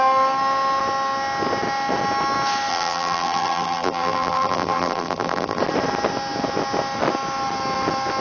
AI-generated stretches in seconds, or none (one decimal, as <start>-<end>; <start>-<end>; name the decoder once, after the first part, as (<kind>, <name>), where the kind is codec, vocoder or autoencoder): 2.7-5.6 (vocoder, BigVGAN v2)